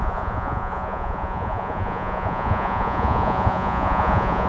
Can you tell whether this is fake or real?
fake